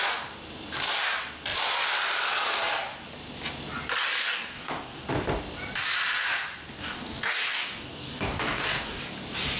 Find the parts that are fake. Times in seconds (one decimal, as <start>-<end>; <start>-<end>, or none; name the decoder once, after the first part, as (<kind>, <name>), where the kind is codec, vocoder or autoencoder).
4.2-5.1 (codec, DAC); 6.8-9.0